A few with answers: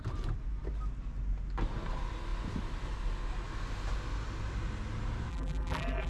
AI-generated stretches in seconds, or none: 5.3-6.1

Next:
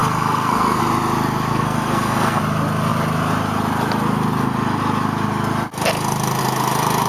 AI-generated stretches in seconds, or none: 0.0-0.8; 1.5-2.4

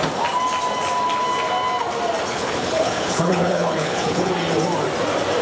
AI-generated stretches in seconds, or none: 2.3-4.3

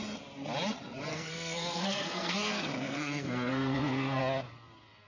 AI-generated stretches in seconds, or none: 1.1-4.2

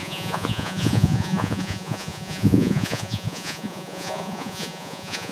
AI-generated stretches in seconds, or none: 0.0-5.3